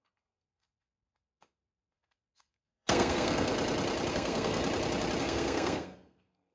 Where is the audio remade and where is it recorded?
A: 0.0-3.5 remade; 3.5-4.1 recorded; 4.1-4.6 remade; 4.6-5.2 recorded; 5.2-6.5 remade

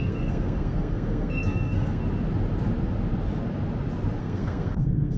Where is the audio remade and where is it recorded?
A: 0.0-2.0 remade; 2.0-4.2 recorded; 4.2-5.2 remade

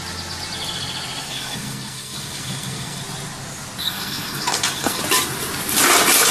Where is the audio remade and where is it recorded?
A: 0.0-1.2 recorded; 1.2-3.0 remade; 3.0-3.8 recorded; 3.8-5.0 remade; 5.0-6.3 recorded

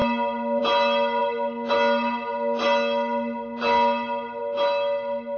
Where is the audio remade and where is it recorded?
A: 0.0-5.4 recorded